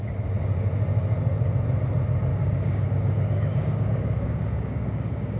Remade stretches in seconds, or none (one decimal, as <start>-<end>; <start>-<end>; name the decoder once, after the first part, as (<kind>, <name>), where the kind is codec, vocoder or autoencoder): 2.3-5.4 (codec, DAC)